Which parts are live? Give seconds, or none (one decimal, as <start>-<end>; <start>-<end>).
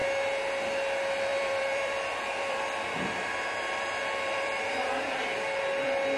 0.0-1.3; 5.0-6.2